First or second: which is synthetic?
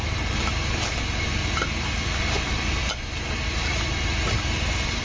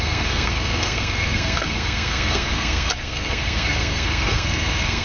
second